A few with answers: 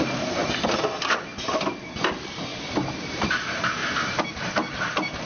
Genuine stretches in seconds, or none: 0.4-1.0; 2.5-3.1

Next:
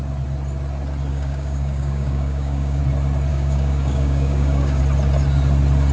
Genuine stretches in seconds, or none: 0.0-1.1; 2.8-3.3; 4.8-5.9

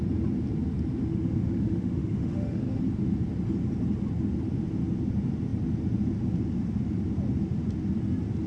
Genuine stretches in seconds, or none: 0.0-1.1; 2.8-8.5

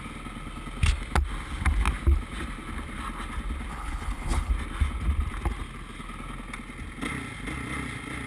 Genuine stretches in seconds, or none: 0.0-3.7; 4.5-8.3